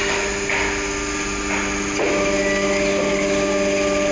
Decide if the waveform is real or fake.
real